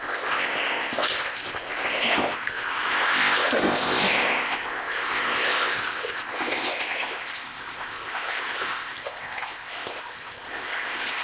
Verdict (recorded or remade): remade